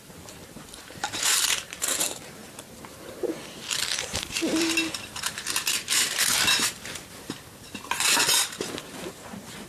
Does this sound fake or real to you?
fake